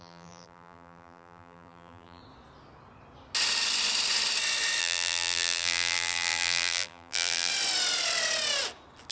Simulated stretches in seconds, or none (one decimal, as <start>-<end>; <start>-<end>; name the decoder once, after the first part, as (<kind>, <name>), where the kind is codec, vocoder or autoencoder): 0.0-2.2 (vocoder, BigVGAN v2); 4.8-7.5